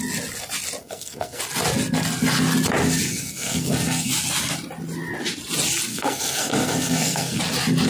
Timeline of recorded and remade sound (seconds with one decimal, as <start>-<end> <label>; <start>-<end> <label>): 0.0-0.8 recorded; 0.8-1.4 remade; 1.4-3.1 recorded; 3.1-4.1 remade; 4.1-5.9 recorded; 5.9-7.4 remade; 7.4-7.9 recorded